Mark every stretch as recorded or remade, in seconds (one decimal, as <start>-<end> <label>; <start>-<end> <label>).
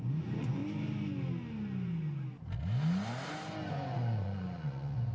0.0-0.6 remade; 0.6-3.7 recorded; 3.7-5.1 remade